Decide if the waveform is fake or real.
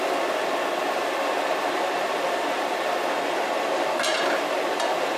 real